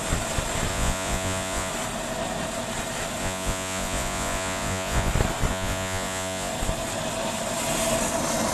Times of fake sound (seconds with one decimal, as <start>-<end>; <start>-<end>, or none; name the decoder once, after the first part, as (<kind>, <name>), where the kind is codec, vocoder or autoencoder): 0.7-1.7 (vocoder, Vocos); 3.2-5.1; 5.5-6.5